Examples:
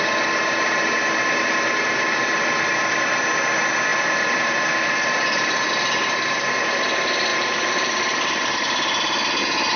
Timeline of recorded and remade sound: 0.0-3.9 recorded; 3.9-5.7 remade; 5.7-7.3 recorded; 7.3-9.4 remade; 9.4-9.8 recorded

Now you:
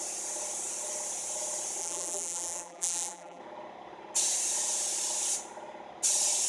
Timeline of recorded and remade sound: 0.0-1.8 recorded; 1.8-3.4 remade; 3.4-6.5 recorded

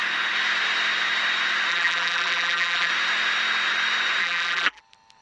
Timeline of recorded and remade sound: 0.0-1.7 recorded; 1.7-2.9 remade; 2.9-4.2 recorded; 4.2-4.8 remade; 4.8-5.2 recorded

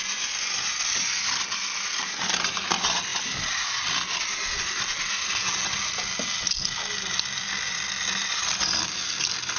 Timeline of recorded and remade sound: 0.0-9.6 recorded

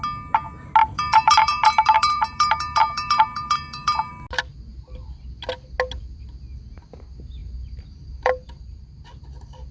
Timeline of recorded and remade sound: 0.0-0.8 recorded; 0.8-4.1 remade; 4.1-7.4 recorded; 7.4-8.8 remade; 8.8-9.7 recorded

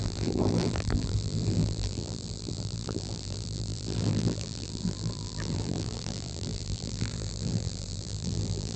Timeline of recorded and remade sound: 0.0-8.8 remade

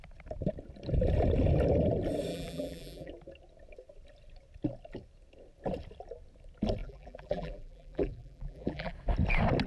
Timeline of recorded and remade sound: 0.0-2.3 recorded; 2.3-3.1 remade; 3.1-6.8 recorded; 6.8-8.9 remade; 8.9-9.7 recorded